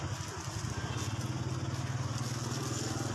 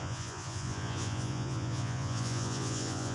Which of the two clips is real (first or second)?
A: first